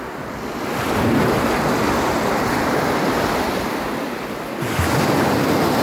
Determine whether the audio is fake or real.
real